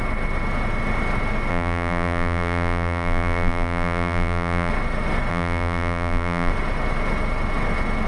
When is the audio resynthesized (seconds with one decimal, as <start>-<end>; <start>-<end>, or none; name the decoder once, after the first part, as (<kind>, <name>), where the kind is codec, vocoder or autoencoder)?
1.5-4.7 (vocoder, BigVGAN v2); 5.3-6.5